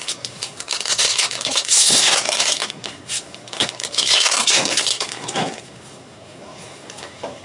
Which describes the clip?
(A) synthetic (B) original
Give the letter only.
A